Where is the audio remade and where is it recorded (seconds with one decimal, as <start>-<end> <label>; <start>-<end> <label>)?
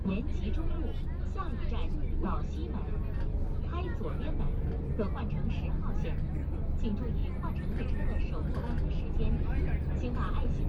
0.0-2.6 recorded; 2.6-5.5 remade; 5.5-7.2 recorded; 7.2-7.8 remade; 7.8-10.7 recorded